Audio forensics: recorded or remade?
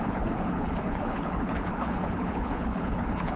remade